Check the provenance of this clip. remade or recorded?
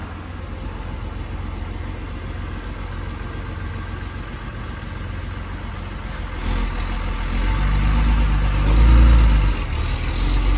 recorded